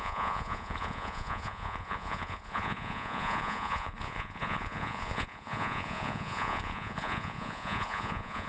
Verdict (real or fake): fake